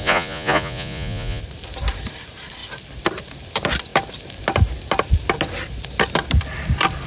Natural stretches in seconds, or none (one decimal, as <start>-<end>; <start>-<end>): 1.4-7.1